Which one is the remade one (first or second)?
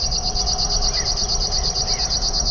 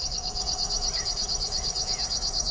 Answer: second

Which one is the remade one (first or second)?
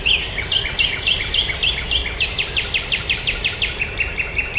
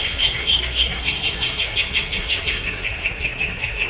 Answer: second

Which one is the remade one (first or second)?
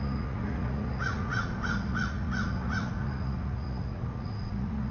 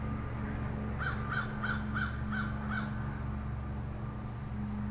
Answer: first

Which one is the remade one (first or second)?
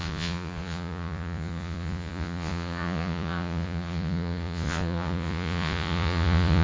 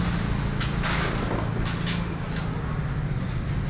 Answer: first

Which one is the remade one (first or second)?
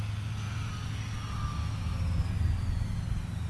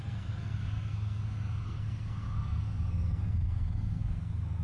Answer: second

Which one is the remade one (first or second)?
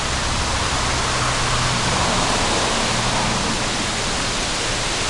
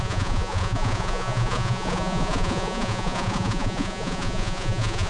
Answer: second